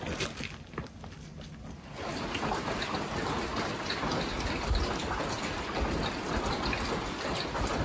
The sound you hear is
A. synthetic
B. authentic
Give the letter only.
B